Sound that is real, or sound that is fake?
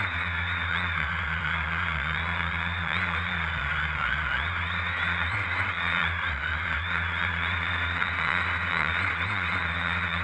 fake